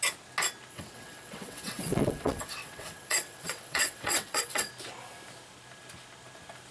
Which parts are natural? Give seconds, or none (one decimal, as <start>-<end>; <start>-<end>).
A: 0.0-0.7; 4.7-6.7